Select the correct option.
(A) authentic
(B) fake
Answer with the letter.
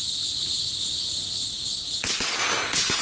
A